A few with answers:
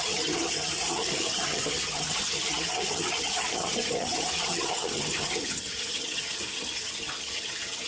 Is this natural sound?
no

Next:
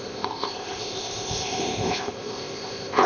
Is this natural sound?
no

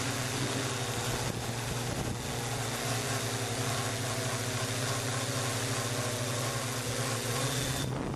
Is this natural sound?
yes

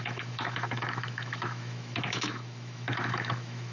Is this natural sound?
no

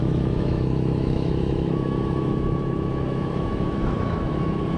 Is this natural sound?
no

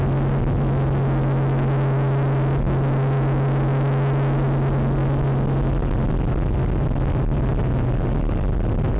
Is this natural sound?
yes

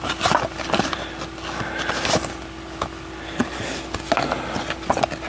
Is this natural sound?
yes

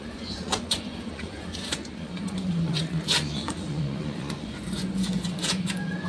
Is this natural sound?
no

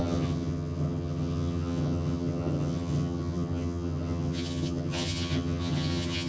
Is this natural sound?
no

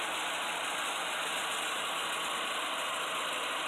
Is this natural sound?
yes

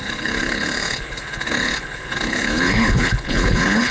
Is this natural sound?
no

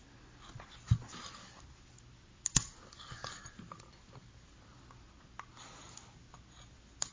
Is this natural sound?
yes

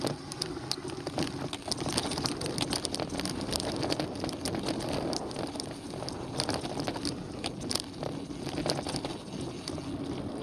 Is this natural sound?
yes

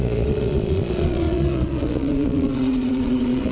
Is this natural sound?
no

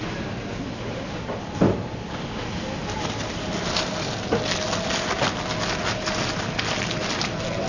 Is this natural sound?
yes